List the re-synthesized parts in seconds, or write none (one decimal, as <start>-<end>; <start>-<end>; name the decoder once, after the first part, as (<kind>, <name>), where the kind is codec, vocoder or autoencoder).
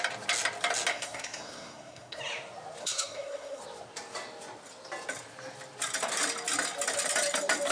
0.9-2.2 (codec, SNAC); 2.8-3.6